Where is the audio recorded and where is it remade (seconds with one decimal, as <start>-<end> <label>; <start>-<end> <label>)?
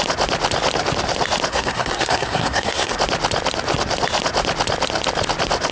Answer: 0.0-1.5 recorded; 1.5-3.0 remade; 3.0-5.7 recorded